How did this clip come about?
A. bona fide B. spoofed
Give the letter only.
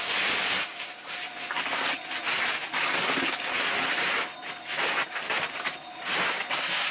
A